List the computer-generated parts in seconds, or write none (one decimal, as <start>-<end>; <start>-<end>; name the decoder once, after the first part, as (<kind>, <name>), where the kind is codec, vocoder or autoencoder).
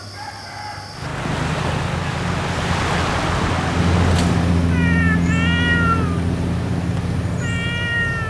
none